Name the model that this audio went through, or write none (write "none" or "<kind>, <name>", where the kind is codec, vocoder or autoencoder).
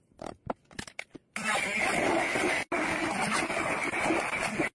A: none